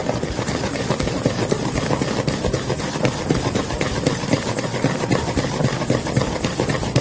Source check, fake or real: fake